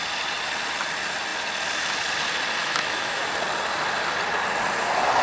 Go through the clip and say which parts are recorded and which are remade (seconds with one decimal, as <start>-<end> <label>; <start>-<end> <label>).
0.0-2.6 recorded; 2.6-3.3 remade; 3.3-5.2 recorded